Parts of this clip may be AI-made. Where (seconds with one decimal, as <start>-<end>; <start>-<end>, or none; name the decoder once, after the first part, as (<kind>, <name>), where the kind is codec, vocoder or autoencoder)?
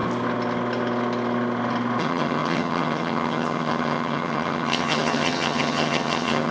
2.0-6.5 (vocoder, HiFi-GAN)